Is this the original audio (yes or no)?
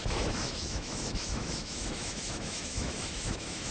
no